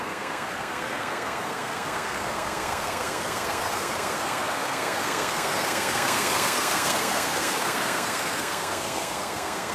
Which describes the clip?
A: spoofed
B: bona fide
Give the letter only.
A